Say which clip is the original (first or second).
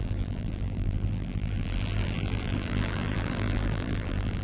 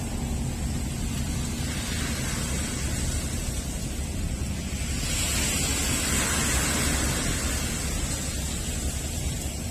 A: second